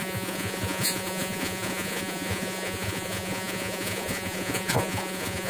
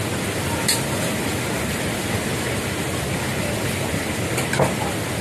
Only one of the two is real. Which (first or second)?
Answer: second